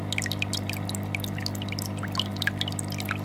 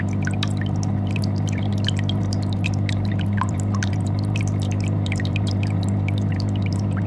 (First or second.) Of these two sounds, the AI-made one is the second